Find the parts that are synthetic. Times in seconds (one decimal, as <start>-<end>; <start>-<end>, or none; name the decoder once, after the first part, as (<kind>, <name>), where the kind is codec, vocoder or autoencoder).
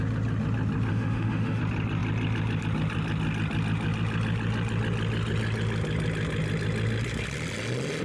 0.9-1.6 (autoencoder, DAC-VAE)